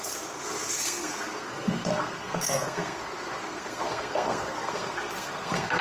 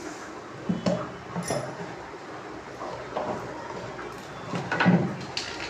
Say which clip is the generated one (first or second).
first